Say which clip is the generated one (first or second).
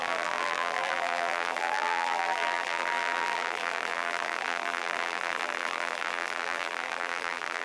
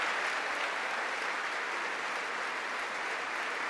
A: first